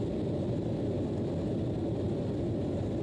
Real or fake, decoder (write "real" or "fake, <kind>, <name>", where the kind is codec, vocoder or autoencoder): real